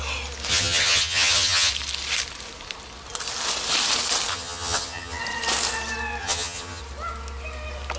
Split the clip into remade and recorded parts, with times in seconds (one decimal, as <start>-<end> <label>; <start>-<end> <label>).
0.0-0.5 recorded; 0.5-1.7 remade; 1.7-4.3 recorded; 4.3-5.2 remade; 5.2-6.2 recorded; 6.2-6.8 remade; 6.8-8.0 recorded